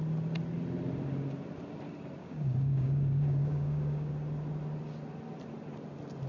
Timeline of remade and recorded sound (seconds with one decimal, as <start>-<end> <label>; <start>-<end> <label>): 0.0-2.2 recorded; 2.2-4.1 remade; 4.1-6.3 recorded